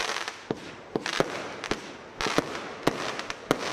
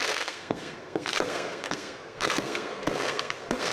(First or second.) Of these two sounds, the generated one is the second